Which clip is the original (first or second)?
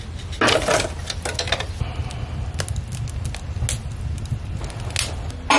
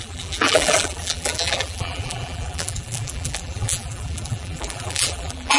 first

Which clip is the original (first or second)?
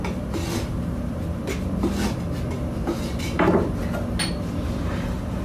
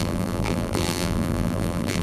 first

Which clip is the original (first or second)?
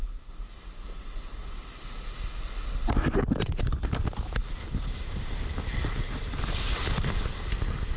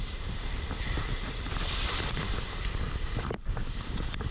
first